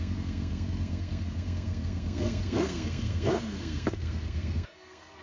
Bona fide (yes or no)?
no